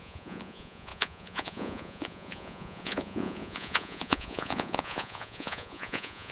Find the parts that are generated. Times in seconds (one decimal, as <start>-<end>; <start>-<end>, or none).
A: 0.0-6.3